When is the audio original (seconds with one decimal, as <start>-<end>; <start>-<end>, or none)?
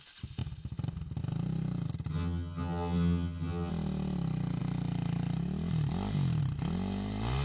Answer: 0.0-2.1; 3.7-7.4